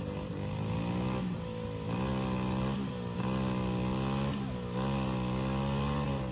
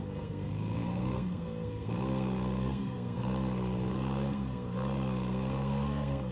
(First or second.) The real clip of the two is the first